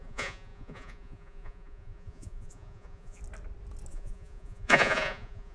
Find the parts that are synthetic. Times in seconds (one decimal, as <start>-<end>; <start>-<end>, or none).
0.0-3.2; 3.9-5.5